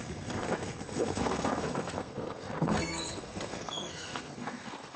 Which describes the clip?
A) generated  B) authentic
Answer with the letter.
A